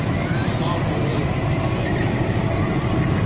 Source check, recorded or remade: remade